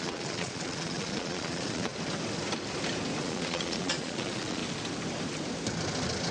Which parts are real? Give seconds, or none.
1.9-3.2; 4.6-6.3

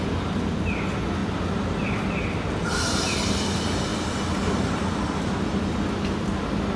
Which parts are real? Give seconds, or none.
0.0-6.8